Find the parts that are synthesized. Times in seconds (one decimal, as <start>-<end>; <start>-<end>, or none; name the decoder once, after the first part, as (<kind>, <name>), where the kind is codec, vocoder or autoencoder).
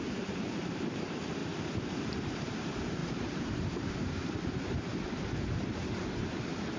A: 0.0-1.4 (vocoder, BigVGAN v2); 2.0-4.9; 6.0-6.8